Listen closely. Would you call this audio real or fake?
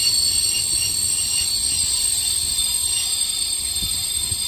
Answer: real